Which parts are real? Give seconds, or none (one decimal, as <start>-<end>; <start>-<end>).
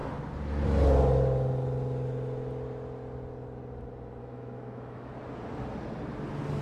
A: 0.0-4.2; 5.1-6.6